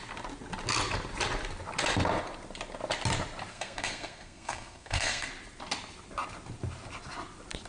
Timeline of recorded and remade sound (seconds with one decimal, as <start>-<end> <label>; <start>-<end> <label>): 0.0-3.5 recorded; 3.5-5.3 remade; 5.3-7.7 recorded